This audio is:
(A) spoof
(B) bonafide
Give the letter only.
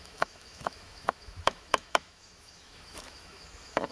A